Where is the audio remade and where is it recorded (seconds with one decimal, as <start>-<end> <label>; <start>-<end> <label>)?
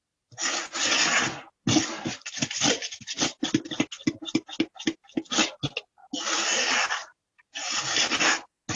0.0-7.0 recorded; 7.0-7.8 remade; 7.8-8.8 recorded